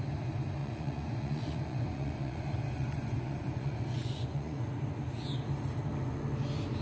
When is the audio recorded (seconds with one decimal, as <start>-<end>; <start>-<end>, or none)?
0.0-0.6; 4.7-6.8